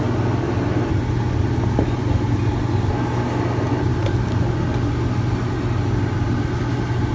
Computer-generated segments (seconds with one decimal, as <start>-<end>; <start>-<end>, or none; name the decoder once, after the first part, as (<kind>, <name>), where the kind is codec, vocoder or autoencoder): none